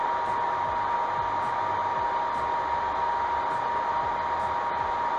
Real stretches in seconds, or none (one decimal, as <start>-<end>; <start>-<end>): 0.0-5.2